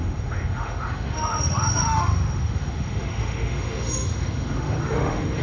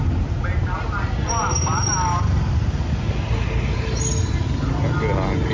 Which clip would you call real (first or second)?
second